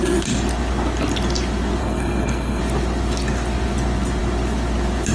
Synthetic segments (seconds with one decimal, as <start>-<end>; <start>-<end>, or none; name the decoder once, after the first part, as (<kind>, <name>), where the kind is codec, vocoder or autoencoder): 1.8-2.6 (codec, SNAC)